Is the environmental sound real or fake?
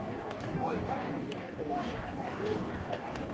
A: fake